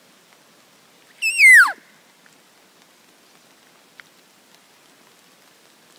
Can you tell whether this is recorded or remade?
recorded